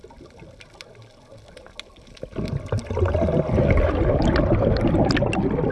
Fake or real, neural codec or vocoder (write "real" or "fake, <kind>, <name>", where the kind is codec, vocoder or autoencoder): real